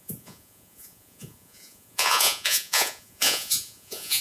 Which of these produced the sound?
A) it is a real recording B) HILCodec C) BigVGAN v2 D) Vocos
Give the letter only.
D